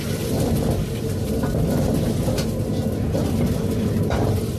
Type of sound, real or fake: real